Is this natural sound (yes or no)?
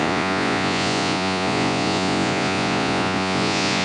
no